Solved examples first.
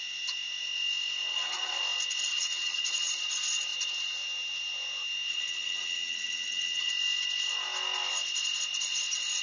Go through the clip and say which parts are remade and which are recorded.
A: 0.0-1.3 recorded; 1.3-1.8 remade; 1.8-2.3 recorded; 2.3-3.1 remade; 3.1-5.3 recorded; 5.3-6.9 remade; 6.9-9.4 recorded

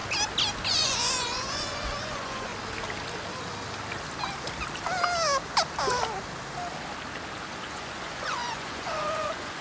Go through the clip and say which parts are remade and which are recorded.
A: 0.0-0.7 recorded; 0.7-2.5 remade; 2.5-7.7 recorded; 7.7-9.6 remade

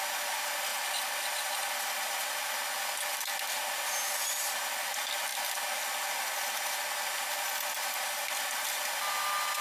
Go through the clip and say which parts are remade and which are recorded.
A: 0.0-9.6 recorded